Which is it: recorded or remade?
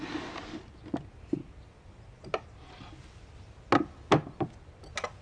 recorded